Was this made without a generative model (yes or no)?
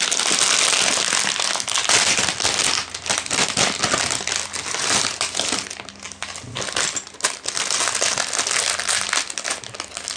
yes